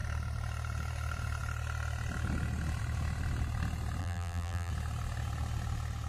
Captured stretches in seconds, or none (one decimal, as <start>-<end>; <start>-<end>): 0.0-4.0; 4.7-6.1